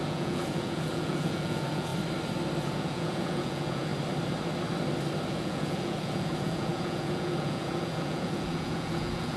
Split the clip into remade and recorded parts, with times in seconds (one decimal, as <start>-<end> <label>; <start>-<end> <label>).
0.0-1.9 remade; 1.9-2.6 recorded; 2.6-3.9 remade; 3.9-5.3 recorded; 5.3-9.4 remade